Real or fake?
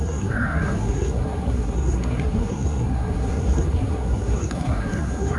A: fake